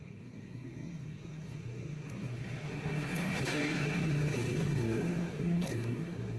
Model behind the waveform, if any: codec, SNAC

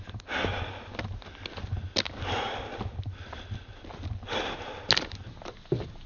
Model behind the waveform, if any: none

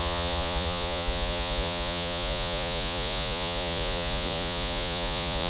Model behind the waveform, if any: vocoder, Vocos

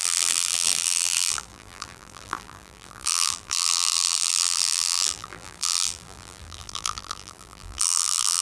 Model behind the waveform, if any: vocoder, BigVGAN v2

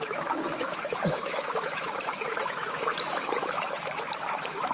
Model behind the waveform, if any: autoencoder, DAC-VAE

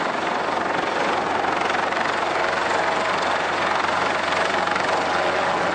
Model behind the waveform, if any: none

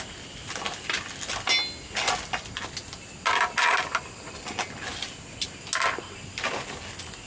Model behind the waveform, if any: none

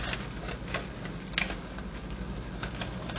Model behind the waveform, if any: none